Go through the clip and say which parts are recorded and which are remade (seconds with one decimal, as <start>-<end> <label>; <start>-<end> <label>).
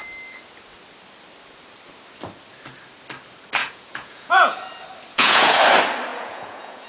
0.0-3.6 recorded; 3.6-4.6 remade; 4.6-5.1 recorded; 5.1-5.6 remade; 5.6-6.1 recorded; 6.1-6.9 remade